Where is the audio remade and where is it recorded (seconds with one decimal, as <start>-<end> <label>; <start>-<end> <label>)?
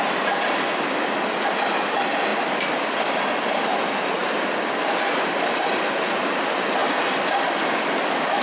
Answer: 0.0-2.3 recorded; 2.3-3.2 remade; 3.2-8.4 recorded